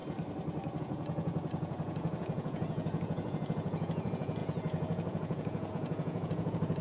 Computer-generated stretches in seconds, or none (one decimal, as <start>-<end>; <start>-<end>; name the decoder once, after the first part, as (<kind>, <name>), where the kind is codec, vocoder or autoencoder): 0.8-6.8 (vocoder, Vocos)